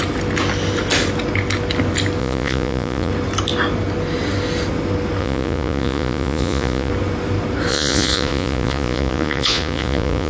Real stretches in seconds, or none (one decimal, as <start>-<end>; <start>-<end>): 0.0-2.2; 3.1-5.2; 6.9-7.7